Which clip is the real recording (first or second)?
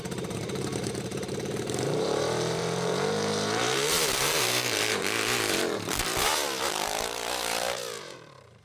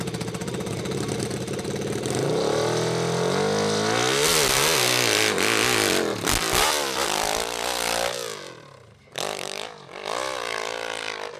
second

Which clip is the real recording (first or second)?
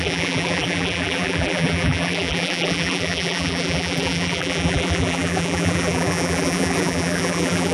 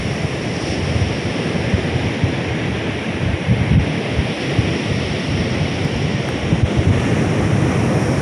second